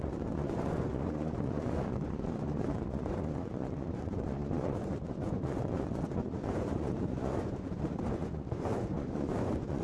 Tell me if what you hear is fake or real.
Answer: fake